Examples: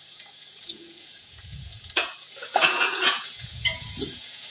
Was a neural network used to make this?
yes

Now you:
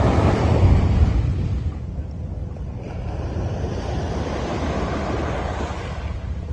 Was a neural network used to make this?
no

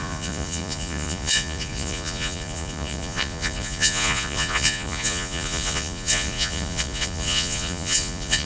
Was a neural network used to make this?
yes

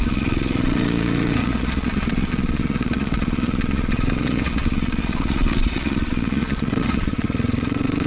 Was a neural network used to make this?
yes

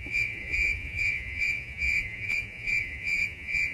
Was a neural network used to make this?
yes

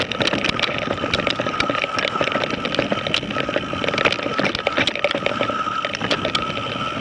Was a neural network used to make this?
no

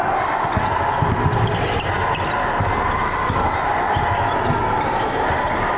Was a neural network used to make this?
no